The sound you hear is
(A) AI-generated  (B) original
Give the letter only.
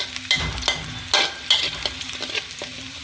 B